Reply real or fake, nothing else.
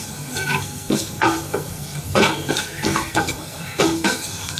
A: fake